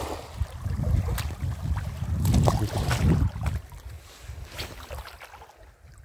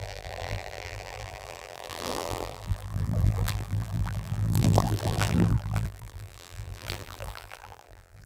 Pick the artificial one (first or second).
second